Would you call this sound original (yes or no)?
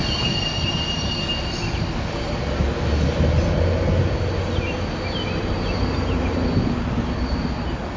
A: yes